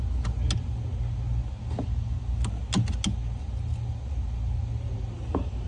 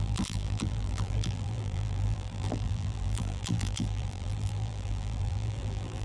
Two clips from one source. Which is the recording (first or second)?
first